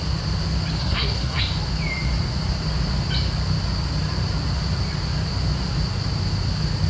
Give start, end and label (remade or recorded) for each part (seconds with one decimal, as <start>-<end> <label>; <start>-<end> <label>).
0.0-0.8 recorded; 0.8-1.4 remade; 1.4-6.9 recorded